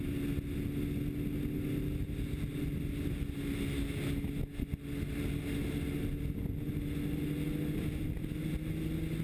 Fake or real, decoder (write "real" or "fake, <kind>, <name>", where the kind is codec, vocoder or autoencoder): real